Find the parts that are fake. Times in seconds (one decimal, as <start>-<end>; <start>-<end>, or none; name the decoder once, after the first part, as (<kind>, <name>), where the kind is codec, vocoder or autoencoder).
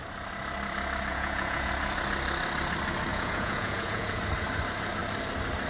1.1-1.7 (vocoder, Vocos); 3.1-4.2